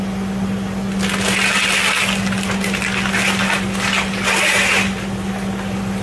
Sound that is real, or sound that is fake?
real